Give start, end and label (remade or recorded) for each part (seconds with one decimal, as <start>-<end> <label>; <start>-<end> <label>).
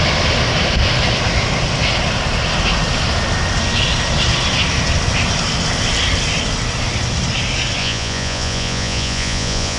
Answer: 0.0-7.8 recorded; 7.8-9.8 remade